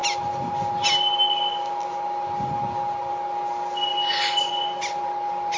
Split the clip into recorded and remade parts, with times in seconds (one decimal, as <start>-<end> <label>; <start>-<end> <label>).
0.0-5.6 recorded